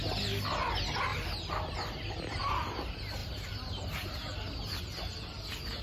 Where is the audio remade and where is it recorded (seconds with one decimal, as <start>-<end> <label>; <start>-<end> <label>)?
0.0-3.2 recorded; 3.2-4.8 remade; 4.8-5.8 recorded